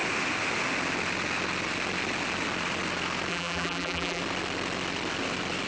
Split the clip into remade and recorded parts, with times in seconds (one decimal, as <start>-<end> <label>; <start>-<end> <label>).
0.0-3.3 recorded; 3.3-4.2 remade; 4.2-5.7 recorded